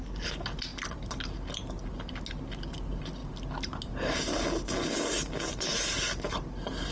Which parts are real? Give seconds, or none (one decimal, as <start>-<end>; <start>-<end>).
0.0-6.9